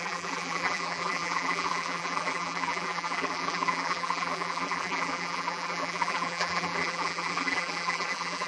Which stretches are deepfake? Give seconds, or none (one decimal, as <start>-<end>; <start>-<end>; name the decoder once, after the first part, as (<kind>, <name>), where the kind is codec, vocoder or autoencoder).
0.0-8.5 (vocoder, BigVGAN v2)